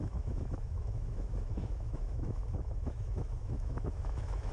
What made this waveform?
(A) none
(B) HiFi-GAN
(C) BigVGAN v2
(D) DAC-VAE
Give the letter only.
D